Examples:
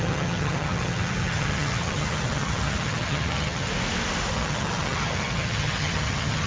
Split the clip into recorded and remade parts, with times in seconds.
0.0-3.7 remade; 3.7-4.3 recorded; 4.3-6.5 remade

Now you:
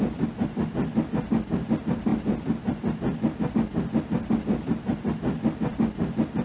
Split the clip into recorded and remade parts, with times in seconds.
0.0-6.4 recorded